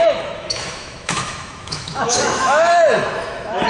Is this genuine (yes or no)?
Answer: no